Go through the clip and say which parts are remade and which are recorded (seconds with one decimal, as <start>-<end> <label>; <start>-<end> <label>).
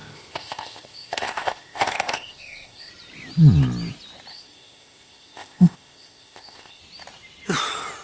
0.0-2.9 remade; 2.9-4.3 recorded; 4.3-6.8 remade; 6.8-8.0 recorded